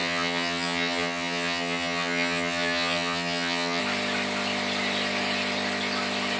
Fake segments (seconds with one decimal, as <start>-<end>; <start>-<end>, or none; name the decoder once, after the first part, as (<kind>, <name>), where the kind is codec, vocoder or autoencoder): 0.0-3.8 (vocoder, HiFi-GAN)